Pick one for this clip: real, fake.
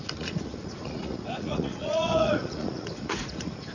fake